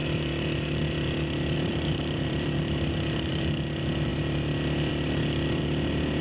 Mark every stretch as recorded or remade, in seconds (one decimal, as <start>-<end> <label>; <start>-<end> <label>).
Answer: 0.0-3.4 remade; 3.4-6.2 recorded